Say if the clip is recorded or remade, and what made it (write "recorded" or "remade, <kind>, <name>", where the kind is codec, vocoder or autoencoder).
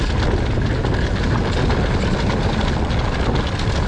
recorded